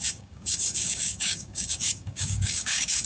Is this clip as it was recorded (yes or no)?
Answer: no